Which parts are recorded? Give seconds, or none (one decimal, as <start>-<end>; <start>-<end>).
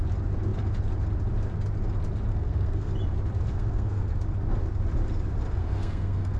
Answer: 0.0-2.3; 2.9-3.5; 4.2-5.6